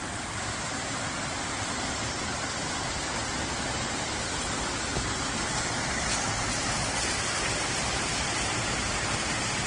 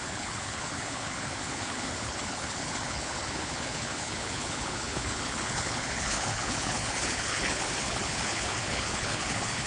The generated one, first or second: second